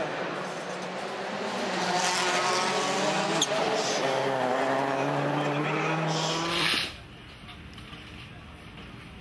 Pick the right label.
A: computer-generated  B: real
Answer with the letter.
B